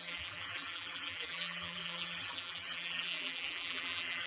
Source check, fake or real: fake